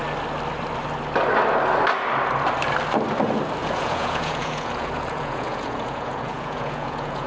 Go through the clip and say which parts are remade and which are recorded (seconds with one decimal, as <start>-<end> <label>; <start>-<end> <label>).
0.0-3.6 recorded; 3.6-7.3 remade